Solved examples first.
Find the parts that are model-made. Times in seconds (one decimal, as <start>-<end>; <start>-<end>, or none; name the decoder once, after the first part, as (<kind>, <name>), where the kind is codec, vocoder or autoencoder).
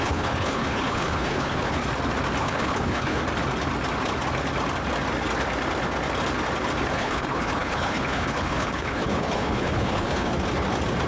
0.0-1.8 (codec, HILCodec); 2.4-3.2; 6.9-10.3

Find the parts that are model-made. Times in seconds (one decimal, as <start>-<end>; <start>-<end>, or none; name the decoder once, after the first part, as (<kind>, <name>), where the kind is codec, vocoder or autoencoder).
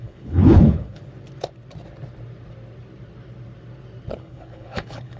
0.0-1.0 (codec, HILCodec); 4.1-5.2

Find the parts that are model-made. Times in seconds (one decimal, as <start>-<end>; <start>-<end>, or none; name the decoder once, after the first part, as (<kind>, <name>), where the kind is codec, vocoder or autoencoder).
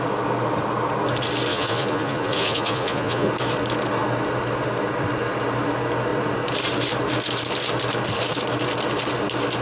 1.5-3.3 (vocoder, Vocos)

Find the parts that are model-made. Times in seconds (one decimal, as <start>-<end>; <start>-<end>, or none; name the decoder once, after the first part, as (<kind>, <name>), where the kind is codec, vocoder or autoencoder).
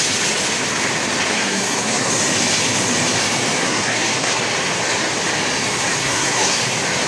1.3-2.1 (codec, SNAC); 3.6-4.4; 6.0-6.6